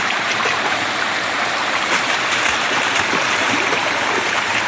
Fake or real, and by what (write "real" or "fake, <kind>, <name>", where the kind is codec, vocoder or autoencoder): fake, vocoder, BigVGAN v2